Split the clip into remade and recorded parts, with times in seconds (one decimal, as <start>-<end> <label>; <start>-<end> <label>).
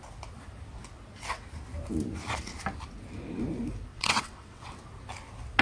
0.0-3.9 recorded; 3.9-4.7 remade; 4.7-5.6 recorded